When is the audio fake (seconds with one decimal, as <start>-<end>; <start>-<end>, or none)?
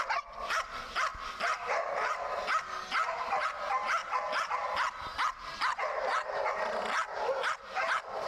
none